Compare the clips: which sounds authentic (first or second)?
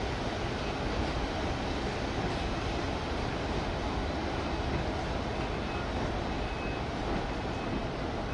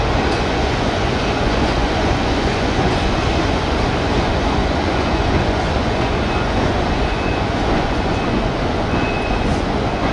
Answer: first